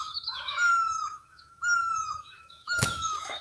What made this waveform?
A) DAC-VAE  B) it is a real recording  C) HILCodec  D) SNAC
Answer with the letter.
A